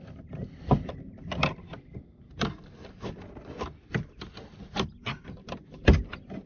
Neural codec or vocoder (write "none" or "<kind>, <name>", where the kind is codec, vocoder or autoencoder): none